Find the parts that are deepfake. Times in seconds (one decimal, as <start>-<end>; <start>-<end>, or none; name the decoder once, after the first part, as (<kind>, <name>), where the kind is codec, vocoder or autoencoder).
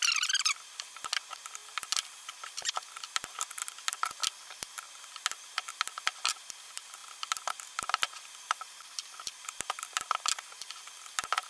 none